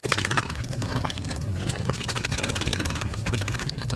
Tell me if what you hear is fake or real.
fake